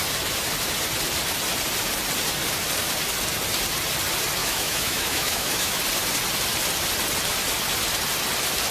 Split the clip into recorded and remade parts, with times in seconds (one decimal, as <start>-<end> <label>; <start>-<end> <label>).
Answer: 0.0-4.4 recorded; 4.4-5.8 remade; 5.8-8.7 recorded